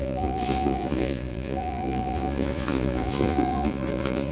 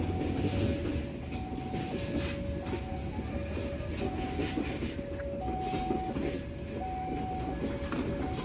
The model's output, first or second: first